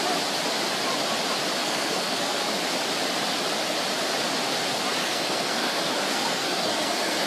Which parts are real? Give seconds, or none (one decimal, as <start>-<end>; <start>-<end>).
0.0-1.6; 2.5-5.0